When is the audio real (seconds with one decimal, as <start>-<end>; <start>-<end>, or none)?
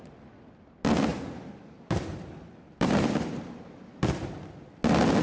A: 0.0-1.1; 3.9-5.2